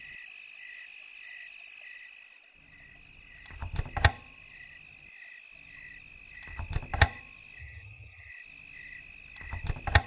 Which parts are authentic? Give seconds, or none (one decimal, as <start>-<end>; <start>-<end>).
0.0-7.6; 8.3-10.1